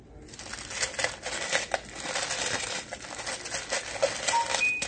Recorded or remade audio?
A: recorded